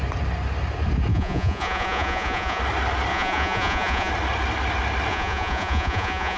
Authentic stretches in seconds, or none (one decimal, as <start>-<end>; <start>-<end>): 0.0-1.1; 2.6-3.1; 4.1-5.1